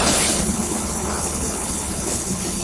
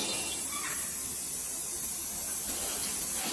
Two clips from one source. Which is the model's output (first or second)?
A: first